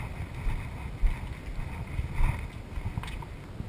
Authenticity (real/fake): real